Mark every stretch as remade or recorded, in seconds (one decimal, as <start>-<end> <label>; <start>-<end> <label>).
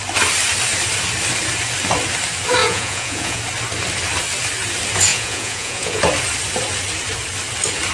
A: 0.0-2.6 recorded; 2.6-3.4 remade; 3.4-5.1 recorded; 5.1-6.0 remade; 6.0-7.9 recorded